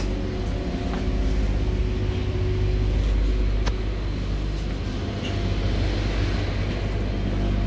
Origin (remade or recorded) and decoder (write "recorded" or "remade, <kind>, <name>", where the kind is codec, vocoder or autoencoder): recorded